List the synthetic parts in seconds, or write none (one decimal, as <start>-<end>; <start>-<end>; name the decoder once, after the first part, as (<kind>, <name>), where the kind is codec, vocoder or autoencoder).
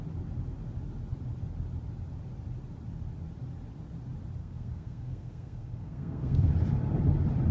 4.4-6.5 (codec, SNAC)